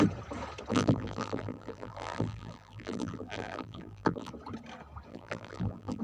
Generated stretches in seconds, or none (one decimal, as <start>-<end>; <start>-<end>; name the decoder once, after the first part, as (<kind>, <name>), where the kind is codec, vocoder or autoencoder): 0.7-4.3 (vocoder, BigVGAN v2); 5.1-6.0